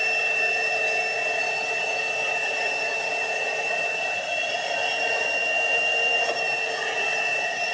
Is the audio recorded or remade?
recorded